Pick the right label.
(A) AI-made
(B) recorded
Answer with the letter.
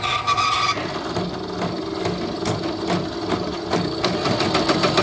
B